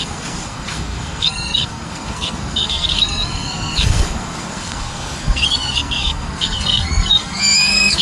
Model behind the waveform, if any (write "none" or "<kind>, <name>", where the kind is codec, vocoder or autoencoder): codec, SNAC